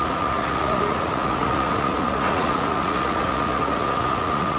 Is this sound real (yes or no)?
no